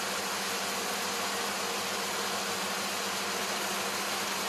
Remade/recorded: recorded